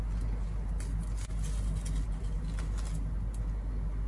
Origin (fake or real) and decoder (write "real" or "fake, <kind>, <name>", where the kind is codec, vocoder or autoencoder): real